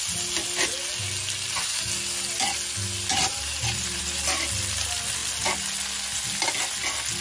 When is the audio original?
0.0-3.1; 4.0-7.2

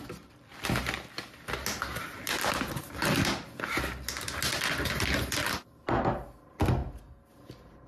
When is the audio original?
0.0-1.9; 2.8-7.9